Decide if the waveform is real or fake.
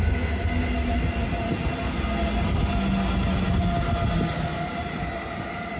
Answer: real